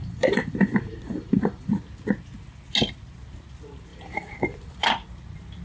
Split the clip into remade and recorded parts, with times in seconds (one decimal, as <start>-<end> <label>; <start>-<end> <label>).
0.0-1.7 remade; 1.7-3.9 recorded; 3.9-4.9 remade; 4.9-5.6 recorded